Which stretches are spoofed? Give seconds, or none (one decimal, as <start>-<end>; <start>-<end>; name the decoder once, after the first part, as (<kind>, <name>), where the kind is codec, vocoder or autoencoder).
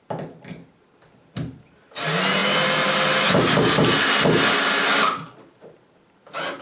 none